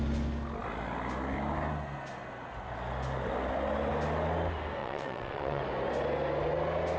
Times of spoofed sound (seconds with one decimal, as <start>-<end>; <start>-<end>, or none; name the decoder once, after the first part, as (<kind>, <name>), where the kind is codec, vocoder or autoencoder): 4.8-5.6 (vocoder, WaveNeXt)

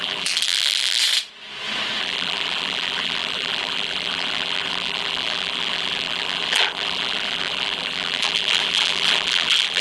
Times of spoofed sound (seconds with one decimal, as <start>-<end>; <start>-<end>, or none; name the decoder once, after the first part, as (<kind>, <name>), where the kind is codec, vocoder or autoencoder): 0.0-1.0 (vocoder, BigVGAN v2); 2.0-9.8

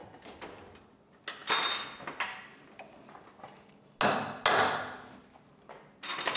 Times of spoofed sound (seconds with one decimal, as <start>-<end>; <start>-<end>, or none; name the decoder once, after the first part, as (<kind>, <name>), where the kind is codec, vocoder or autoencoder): none

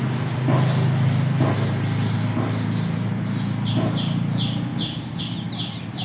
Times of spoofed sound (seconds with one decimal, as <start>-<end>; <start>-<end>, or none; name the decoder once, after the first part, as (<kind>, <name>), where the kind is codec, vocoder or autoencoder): none

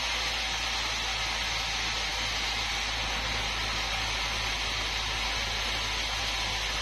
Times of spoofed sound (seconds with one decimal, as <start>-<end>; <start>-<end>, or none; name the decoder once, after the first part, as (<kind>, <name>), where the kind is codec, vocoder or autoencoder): none

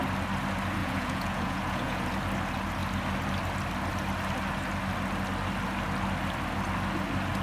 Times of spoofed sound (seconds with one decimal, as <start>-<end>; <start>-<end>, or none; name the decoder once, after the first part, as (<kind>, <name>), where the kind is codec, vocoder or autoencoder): 0.8-2.1 (vocoder, Vocos)

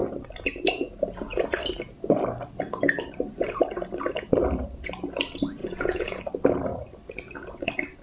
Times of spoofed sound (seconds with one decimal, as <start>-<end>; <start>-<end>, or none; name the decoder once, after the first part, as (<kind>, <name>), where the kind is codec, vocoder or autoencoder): 5.6-6.2 (vocoder, Vocos)

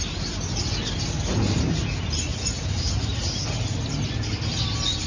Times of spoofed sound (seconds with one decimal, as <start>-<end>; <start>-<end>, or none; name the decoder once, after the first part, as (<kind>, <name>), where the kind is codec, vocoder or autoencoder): 1.3-1.8 (vocoder, BigVGAN v2); 2.3-3.5